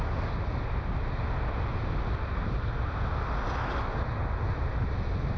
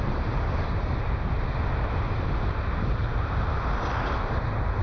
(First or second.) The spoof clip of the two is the second